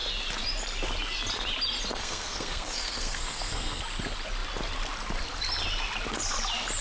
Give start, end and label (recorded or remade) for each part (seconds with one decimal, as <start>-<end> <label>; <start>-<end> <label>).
0.0-2.0 recorded; 2.0-3.8 remade; 3.8-6.8 recorded